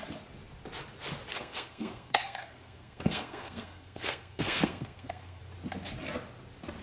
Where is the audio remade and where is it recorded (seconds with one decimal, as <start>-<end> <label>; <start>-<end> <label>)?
0.0-1.3 recorded; 1.3-5.4 remade; 5.4-6.8 recorded